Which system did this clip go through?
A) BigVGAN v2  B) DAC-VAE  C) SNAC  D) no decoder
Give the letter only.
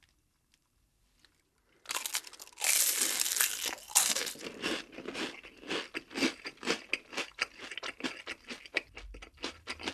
D